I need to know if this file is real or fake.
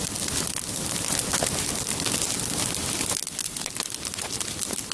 real